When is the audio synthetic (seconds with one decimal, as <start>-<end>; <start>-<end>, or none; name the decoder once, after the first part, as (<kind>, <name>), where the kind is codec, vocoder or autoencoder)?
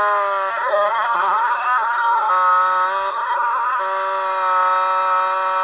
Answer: 0.5-2.3 (codec, SNAC); 3.1-3.8